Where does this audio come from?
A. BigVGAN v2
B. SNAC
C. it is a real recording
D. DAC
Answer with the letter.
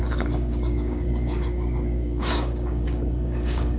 D